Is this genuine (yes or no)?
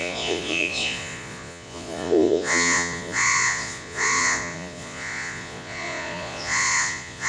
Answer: no